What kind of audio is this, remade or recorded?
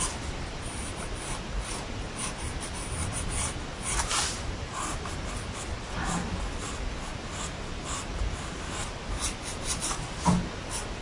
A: recorded